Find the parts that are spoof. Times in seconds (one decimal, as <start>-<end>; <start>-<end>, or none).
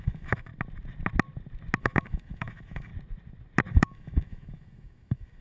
0.0-0.5; 1.8-2.9; 3.7-5.4